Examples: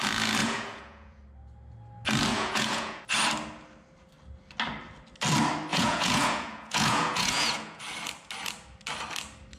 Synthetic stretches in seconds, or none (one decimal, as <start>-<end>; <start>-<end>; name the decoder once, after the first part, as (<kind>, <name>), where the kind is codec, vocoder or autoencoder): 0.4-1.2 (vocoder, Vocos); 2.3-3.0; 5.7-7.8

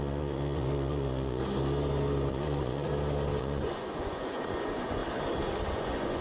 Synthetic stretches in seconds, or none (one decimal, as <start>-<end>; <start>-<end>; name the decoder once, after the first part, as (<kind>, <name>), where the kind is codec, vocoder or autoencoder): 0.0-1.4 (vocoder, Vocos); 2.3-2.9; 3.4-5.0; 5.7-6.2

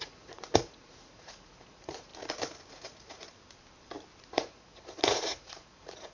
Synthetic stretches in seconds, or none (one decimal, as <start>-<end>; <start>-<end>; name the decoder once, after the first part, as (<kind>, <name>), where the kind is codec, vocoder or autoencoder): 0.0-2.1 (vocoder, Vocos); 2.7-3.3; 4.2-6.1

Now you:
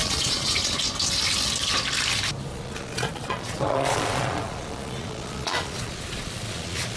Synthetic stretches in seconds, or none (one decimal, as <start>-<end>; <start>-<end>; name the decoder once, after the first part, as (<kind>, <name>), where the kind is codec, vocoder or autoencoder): 0.0-0.8 (vocoder, Vocos); 2.5-7.0

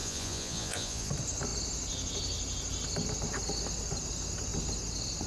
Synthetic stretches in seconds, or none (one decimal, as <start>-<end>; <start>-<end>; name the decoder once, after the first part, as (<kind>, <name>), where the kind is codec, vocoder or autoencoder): 0.0-1.1 (vocoder, Vocos)

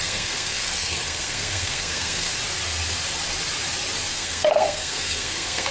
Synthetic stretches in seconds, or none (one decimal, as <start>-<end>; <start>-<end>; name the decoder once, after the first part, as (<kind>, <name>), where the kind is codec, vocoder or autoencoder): 0.0-2.4 (codec, SNAC); 4.1-5.7